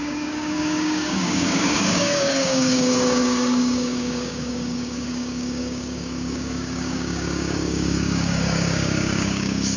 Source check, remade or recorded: remade